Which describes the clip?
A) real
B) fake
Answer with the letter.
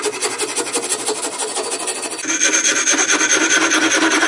A